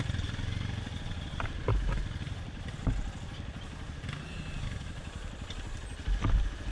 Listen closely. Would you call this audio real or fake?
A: real